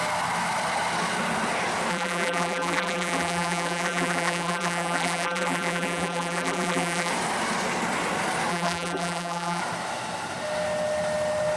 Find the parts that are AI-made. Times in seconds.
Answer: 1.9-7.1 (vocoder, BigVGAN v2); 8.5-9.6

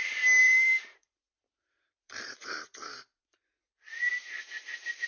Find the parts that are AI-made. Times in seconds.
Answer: 0.4-3.5 (vocoder, BigVGAN v2)

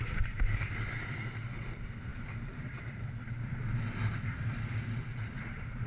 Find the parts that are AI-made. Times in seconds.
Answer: none

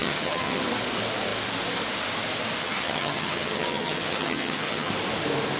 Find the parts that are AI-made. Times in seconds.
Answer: 0.0-0.6 (vocoder, HiFi-GAN); 2.6-4.9

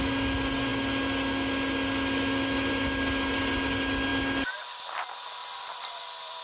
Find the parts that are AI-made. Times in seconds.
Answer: 5.4-6.0 (vocoder, BigVGAN v2)